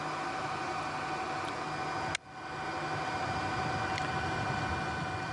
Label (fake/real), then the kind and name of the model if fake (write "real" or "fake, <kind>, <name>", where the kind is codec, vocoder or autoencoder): real